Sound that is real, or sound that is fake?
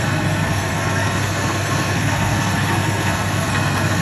fake